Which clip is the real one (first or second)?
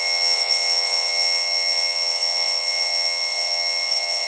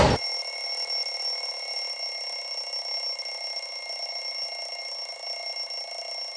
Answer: second